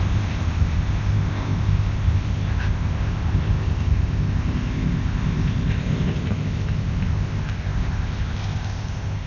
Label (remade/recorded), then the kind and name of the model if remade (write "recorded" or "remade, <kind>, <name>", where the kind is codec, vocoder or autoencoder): remade, codec, ZipCodec